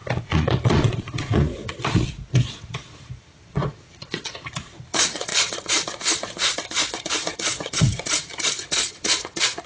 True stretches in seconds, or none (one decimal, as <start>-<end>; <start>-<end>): none